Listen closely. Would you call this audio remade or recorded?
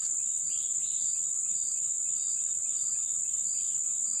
recorded